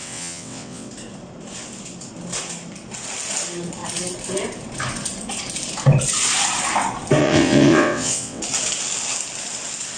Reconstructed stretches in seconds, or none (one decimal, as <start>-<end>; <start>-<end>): 0.0-0.9; 7.2-8.4